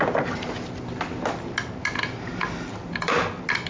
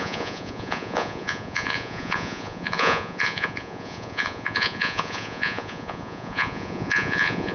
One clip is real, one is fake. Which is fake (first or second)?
second